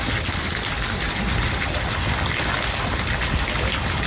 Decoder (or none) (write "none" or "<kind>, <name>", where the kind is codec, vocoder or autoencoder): none